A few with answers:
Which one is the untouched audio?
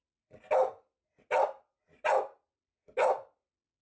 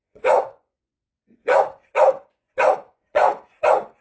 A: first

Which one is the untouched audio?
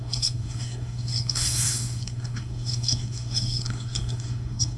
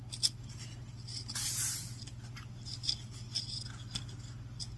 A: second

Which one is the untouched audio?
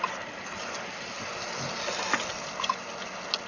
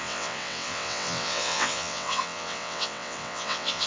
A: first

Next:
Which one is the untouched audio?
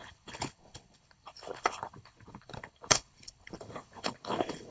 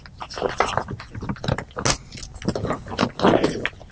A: second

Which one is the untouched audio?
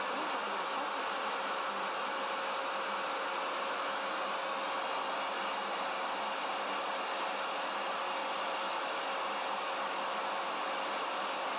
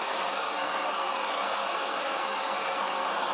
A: first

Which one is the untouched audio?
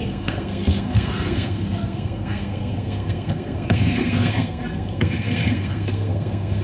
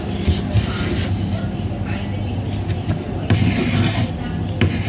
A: second